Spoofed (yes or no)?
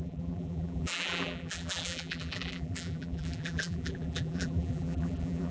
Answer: yes